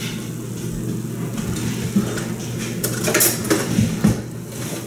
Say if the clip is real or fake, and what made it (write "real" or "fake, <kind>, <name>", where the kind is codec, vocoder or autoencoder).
real